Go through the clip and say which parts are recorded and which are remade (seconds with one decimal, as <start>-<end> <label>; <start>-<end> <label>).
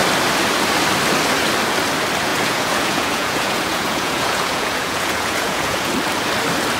0.0-2.3 recorded; 2.3-5.9 remade; 5.9-6.8 recorded